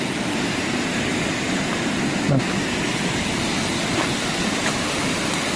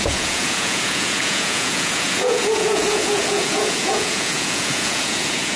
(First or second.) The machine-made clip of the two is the second